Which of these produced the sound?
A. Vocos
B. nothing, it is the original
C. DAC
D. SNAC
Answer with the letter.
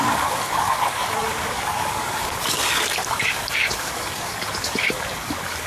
C